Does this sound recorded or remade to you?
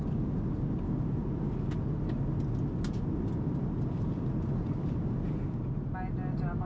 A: recorded